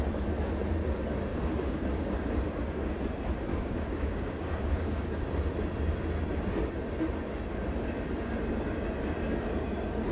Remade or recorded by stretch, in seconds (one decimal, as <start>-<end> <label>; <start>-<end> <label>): 0.0-1.3 recorded; 1.3-2.9 remade; 2.9-3.5 recorded; 3.5-5.2 remade; 5.2-10.1 recorded

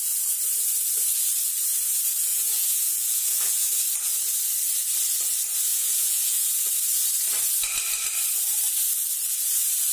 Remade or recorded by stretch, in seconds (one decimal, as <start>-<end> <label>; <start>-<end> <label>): 0.0-2.3 recorded; 2.3-3.7 remade; 3.7-5.7 recorded; 5.7-6.7 remade; 6.7-9.9 recorded

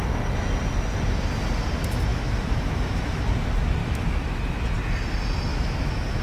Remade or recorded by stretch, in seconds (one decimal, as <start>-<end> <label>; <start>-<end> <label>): 0.0-2.1 recorded; 2.1-3.2 remade; 3.2-3.8 recorded; 3.8-4.4 remade; 4.4-5.5 recorded; 5.5-6.2 remade

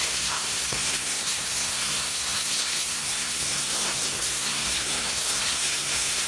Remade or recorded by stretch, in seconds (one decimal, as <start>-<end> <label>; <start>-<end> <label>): 0.0-6.3 remade

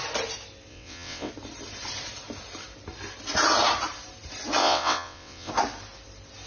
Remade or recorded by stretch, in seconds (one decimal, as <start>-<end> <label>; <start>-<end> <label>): 0.0-0.7 recorded; 0.7-1.3 remade; 1.3-4.6 recorded; 4.6-5.5 remade; 5.5-6.5 recorded

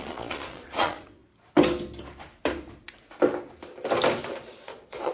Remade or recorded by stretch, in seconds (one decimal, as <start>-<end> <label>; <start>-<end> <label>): 0.0-1.2 remade; 1.2-4.3 recorded; 4.3-5.1 remade

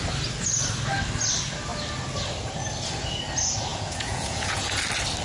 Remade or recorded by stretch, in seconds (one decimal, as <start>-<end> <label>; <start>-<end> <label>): 0.0-3.7 recorded; 3.7-4.8 remade; 4.8-5.2 recorded

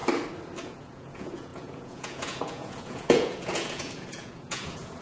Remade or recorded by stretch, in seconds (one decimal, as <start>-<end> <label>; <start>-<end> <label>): 0.0-0.6 recorded; 0.6-5.0 remade